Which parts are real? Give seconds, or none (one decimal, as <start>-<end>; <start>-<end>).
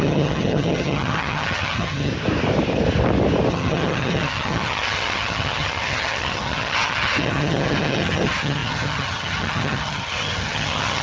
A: 2.1-3.5